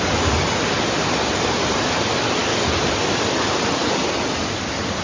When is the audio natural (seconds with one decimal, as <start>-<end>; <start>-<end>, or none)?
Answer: 0.0-5.0